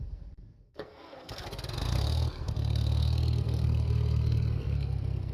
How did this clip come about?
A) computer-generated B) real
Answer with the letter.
A